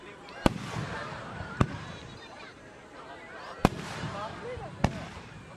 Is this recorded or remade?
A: remade